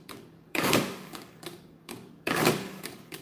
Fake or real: fake